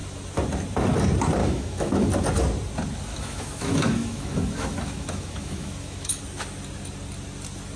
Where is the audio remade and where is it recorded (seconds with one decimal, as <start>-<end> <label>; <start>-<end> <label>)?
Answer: 0.0-1.4 recorded; 1.4-2.1 remade; 2.1-3.1 recorded; 3.1-6.2 remade; 6.2-7.8 recorded